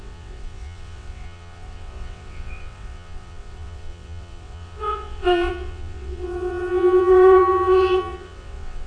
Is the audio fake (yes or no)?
yes